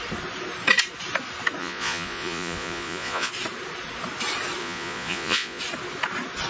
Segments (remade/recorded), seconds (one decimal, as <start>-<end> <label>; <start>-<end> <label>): 0.0-1.6 recorded; 1.6-3.3 remade; 3.3-4.6 recorded; 4.6-5.6 remade; 5.6-6.5 recorded